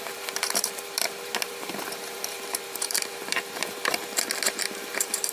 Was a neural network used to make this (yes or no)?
yes